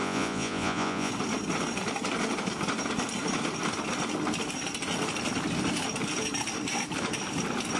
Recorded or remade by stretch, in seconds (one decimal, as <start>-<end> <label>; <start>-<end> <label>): 0.0-1.1 remade; 1.1-7.8 recorded